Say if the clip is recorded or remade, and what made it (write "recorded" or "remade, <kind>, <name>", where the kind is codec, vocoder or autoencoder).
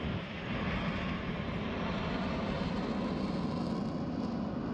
recorded